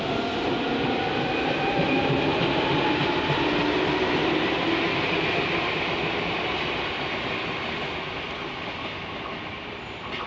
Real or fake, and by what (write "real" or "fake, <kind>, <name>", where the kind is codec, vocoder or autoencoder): real